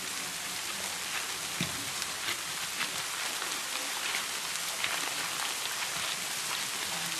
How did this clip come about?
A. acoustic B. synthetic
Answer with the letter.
A